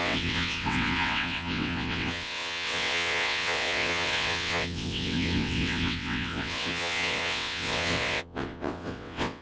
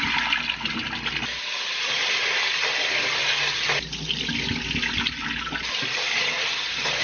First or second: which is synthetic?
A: first